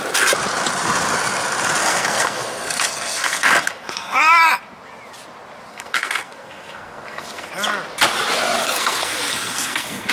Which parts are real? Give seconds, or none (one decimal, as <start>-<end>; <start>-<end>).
0.0-1.8; 4.2-5.7; 7.5-8.6